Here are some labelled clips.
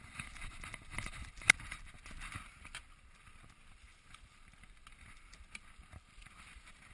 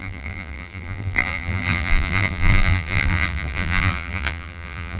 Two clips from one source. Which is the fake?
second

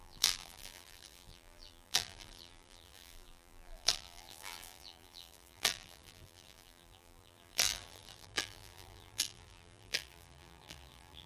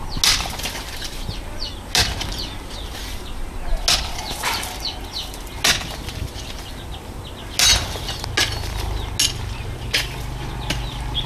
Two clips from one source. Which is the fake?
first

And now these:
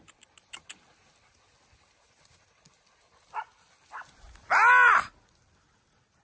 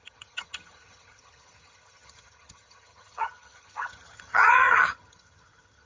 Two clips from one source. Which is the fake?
second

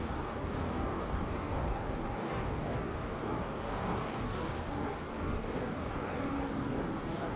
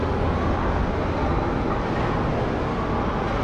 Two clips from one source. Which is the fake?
first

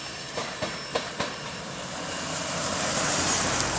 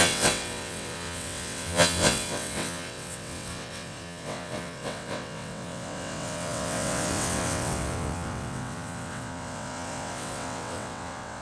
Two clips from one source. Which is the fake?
second